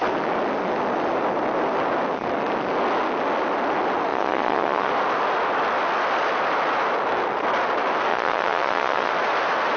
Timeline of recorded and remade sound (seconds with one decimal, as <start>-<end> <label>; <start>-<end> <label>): 0.0-4.1 recorded; 4.1-4.9 remade; 4.9-8.1 recorded; 8.1-9.1 remade; 9.1-9.8 recorded